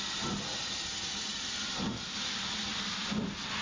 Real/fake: real